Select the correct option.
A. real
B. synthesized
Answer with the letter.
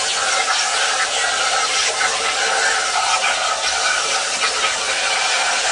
A